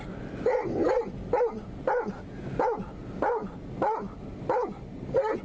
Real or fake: real